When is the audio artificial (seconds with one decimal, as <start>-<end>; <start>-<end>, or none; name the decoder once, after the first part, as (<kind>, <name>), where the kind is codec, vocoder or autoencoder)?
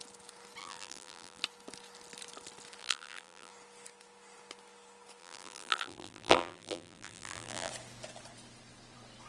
0.6-1.4 (vocoder, BigVGAN v2); 2.8-3.5; 5.2-7.7